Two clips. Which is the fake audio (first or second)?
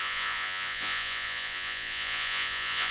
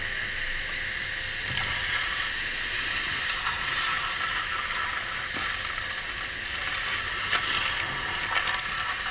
first